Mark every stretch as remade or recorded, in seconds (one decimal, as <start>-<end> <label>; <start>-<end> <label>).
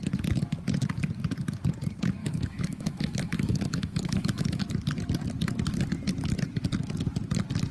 0.0-2.2 recorded; 2.2-4.6 remade; 4.6-7.7 recorded